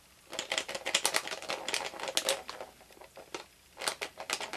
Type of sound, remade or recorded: recorded